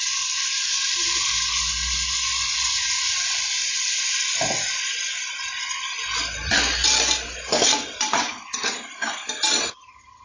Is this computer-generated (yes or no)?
no